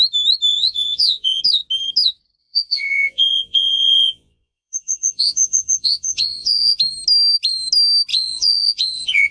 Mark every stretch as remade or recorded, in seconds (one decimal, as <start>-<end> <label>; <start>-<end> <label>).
0.0-0.5 recorded; 0.5-1.4 remade; 1.4-2.4 recorded; 2.4-6.8 remade; 6.8-8.1 recorded; 8.1-9.3 remade

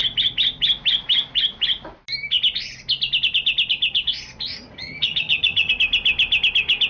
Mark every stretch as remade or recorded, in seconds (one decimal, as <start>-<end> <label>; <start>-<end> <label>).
0.0-4.5 recorded; 4.5-5.7 remade; 5.7-6.9 recorded

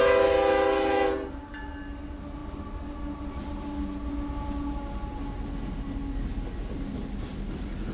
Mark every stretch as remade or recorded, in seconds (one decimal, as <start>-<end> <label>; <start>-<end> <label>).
0.0-7.9 recorded

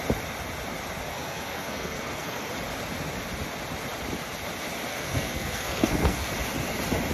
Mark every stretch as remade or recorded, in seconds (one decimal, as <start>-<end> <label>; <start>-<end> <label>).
0.0-1.1 recorded; 1.1-2.5 remade; 2.5-4.9 recorded; 4.9-6.3 remade; 6.3-7.1 recorded

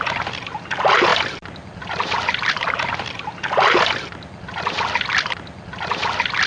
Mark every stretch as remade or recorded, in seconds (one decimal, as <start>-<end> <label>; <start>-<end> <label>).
0.0-6.5 recorded

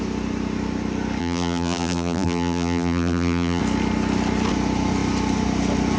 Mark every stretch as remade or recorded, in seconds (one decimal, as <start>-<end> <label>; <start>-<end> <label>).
0.0-1.2 recorded; 1.2-3.6 remade; 3.6-6.0 recorded

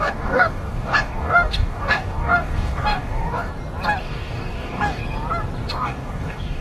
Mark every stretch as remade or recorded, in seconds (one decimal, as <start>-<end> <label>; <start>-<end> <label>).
0.0-3.5 remade; 3.5-4.0 recorded; 4.0-5.0 remade; 5.0-5.7 recorded; 5.7-6.6 remade